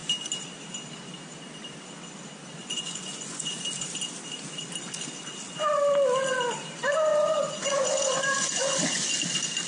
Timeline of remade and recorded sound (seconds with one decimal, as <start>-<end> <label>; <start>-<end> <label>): 0.0-2.6 recorded; 2.6-3.6 remade; 3.6-7.1 recorded; 7.1-9.1 remade; 9.1-9.7 recorded